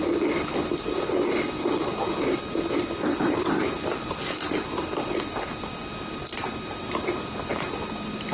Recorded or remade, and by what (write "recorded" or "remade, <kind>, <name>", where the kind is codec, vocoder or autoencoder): recorded